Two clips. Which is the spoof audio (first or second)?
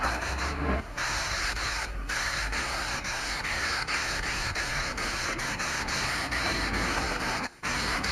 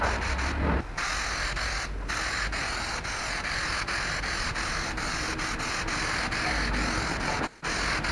first